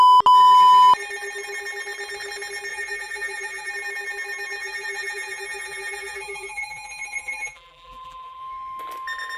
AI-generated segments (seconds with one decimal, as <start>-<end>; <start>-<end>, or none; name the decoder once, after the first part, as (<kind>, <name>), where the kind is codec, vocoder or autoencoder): 2.7-3.7 (vocoder, BigVGAN v2); 4.6-8.4